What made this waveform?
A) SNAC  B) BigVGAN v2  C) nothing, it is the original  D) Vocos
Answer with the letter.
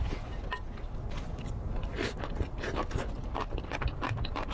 C